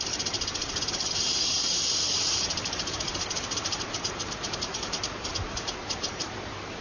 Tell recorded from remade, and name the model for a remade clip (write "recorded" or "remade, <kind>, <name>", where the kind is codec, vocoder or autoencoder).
remade, vocoder, BigVGAN v2